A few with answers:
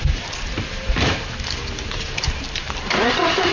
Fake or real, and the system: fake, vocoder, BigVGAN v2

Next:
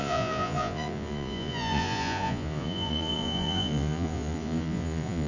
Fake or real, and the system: fake, vocoder, Vocos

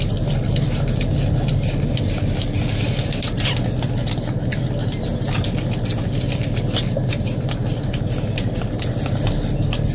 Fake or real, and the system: real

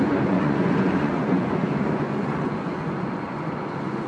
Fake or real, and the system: fake, vocoder, Vocos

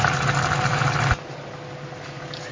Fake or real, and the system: real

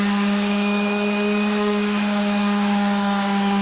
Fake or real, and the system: fake, codec, DAC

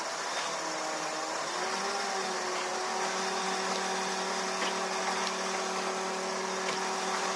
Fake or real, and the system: real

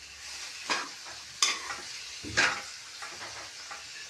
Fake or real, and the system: real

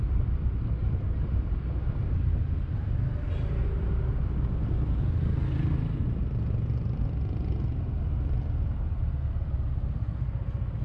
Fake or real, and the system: real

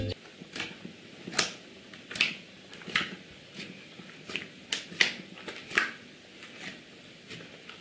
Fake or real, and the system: real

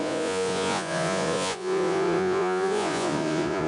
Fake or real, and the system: fake, vocoder, Vocos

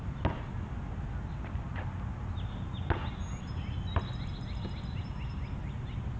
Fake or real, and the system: real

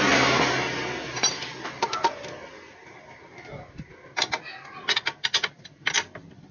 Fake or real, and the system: real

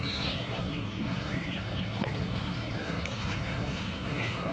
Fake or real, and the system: fake, codec, SNAC